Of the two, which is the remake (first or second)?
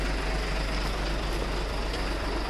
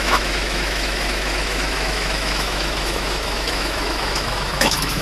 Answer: second